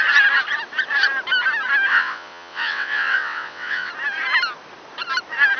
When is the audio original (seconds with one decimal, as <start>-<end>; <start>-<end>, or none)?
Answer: 0.0-1.9; 3.9-5.6